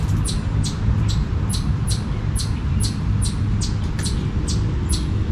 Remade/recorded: recorded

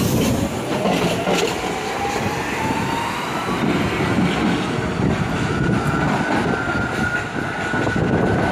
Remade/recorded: recorded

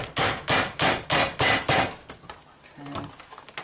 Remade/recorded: recorded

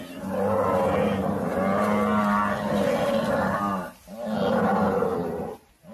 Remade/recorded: recorded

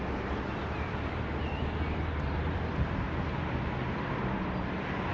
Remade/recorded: remade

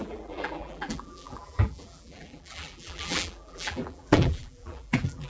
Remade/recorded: remade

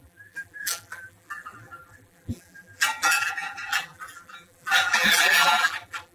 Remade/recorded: remade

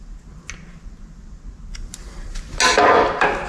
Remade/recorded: recorded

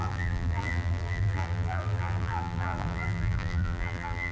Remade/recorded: remade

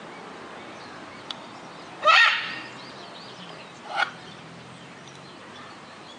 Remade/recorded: remade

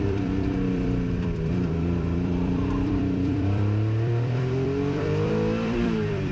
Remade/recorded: remade